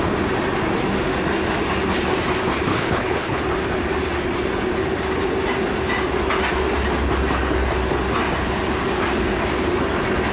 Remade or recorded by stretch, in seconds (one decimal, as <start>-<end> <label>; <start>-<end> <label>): 0.0-2.7 recorded; 2.7-3.4 remade; 3.4-10.3 recorded